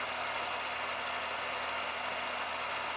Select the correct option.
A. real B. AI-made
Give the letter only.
A